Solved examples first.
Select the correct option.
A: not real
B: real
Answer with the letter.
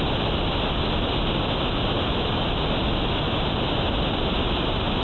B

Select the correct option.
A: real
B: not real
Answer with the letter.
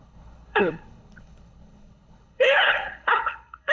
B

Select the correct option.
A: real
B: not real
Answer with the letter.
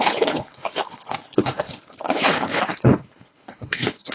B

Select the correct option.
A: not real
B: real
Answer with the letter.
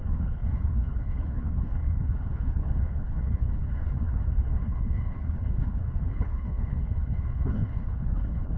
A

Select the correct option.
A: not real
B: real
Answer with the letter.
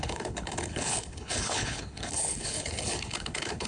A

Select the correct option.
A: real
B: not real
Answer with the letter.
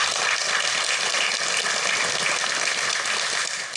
A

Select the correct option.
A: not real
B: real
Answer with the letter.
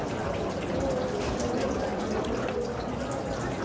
B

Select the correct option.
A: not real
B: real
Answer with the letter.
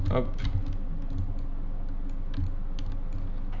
B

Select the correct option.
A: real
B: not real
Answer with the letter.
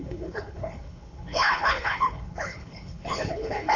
B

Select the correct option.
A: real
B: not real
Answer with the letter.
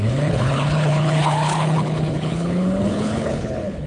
B